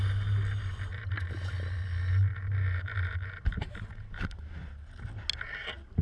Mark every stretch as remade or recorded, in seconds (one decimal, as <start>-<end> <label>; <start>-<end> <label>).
0.0-0.9 recorded; 0.9-1.5 remade; 1.5-2.3 recorded; 2.3-4.9 remade; 4.9-6.0 recorded